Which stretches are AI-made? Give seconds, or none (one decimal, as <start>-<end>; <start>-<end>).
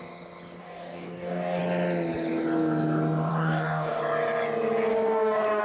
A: 0.6-1.6; 3.3-4.0; 4.9-5.6